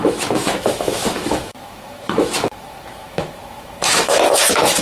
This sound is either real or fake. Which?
fake